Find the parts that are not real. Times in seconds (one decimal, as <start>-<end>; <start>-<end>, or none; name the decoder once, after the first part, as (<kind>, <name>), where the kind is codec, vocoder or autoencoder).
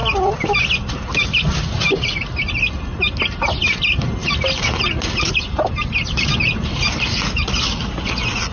none